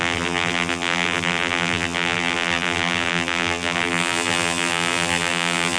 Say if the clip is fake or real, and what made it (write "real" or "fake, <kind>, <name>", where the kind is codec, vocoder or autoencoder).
fake, vocoder, BigVGAN v2